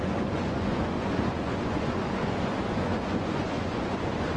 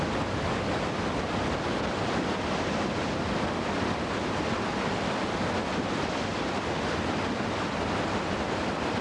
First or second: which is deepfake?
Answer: first